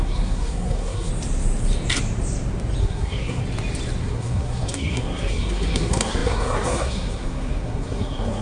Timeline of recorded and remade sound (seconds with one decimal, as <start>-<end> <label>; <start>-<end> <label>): 0.0-1.1 remade; 1.1-2.8 recorded; 2.8-3.4 remade; 3.4-4.0 recorded; 4.0-8.4 remade